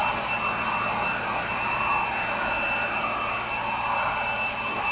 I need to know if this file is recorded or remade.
recorded